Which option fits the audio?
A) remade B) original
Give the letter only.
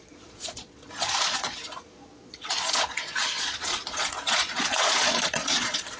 A